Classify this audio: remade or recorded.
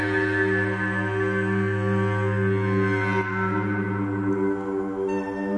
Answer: recorded